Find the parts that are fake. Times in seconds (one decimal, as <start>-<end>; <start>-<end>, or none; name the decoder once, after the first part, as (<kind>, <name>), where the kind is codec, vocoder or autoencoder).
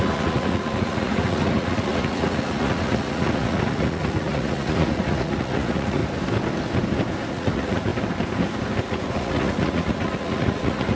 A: 0.0-6.0 (vocoder, Vocos); 7.3-7.9; 8.8-10.9